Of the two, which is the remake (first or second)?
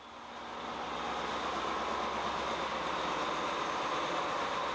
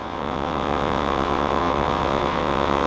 second